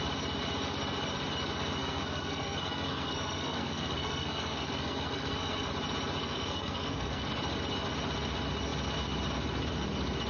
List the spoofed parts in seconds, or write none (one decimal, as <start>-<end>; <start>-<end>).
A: 1.8-5.7; 6.2-7.3